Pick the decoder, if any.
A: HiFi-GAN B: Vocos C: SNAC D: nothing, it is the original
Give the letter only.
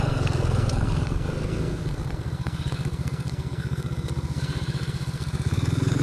C